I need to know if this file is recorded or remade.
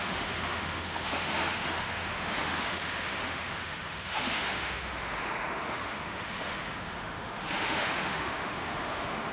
remade